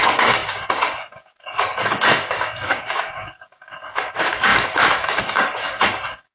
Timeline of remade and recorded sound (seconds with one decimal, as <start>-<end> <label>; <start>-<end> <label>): 0.0-6.3 remade